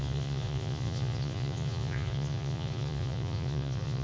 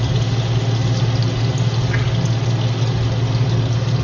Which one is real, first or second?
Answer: second